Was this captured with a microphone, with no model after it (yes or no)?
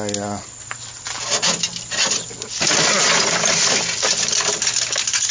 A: yes